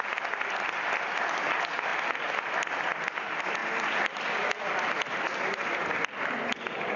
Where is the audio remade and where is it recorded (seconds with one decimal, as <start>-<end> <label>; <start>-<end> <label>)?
0.0-7.0 recorded